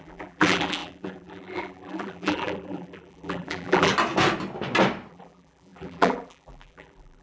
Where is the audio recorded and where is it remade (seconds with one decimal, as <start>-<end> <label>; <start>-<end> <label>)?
0.0-3.9 remade; 3.9-5.1 recorded; 5.1-7.2 remade